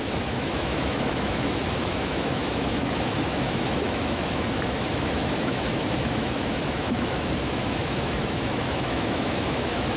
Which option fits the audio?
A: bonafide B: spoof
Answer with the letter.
B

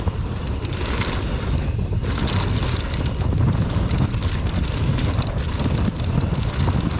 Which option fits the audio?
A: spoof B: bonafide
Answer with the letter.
B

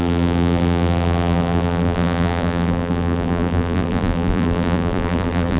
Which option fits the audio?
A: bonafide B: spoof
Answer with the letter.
B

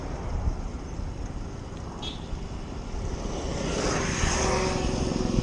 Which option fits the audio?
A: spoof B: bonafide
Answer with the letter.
B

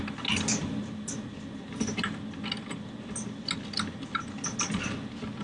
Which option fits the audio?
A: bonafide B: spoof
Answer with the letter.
A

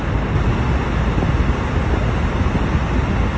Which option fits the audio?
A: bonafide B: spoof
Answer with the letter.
A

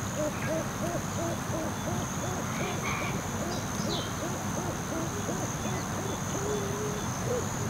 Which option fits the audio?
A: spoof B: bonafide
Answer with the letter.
B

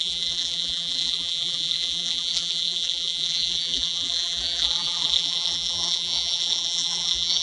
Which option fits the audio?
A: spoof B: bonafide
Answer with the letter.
A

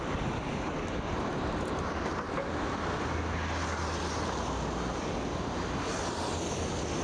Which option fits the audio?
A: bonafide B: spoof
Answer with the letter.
A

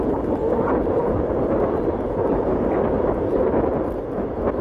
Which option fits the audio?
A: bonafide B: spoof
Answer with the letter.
A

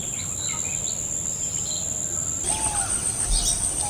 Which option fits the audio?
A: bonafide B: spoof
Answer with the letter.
A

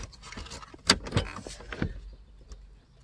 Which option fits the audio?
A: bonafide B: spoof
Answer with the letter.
A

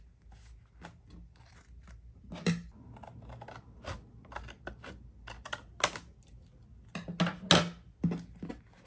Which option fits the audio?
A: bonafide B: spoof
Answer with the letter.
A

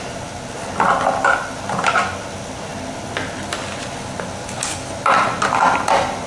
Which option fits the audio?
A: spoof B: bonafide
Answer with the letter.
B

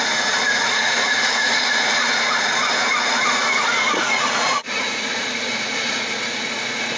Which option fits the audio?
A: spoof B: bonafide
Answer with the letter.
A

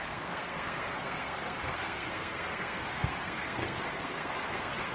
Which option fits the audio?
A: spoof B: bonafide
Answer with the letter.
A